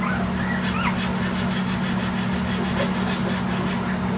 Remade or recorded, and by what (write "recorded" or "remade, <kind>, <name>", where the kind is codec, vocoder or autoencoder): recorded